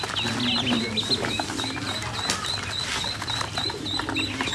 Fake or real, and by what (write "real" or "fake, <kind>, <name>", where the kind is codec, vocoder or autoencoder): real